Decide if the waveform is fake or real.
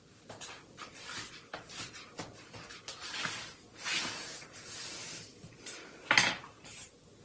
real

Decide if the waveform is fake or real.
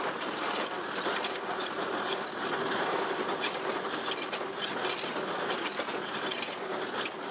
real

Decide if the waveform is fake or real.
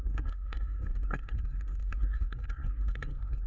fake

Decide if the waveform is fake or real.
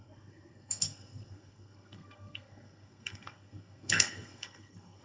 fake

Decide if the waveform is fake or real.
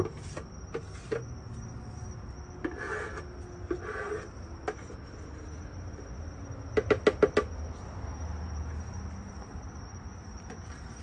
real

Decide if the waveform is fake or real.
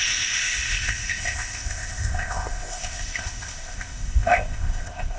fake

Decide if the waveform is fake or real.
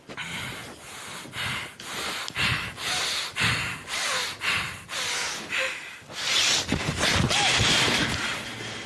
real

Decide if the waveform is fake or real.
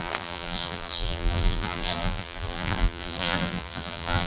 fake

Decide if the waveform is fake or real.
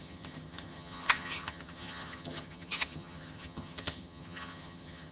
fake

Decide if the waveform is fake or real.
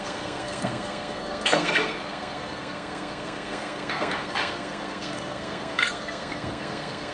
fake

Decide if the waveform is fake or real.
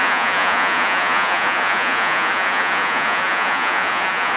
fake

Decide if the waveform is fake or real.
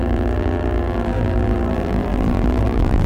fake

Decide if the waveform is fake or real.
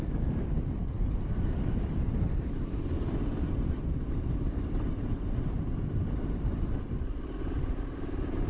fake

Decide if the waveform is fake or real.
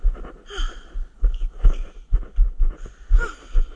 real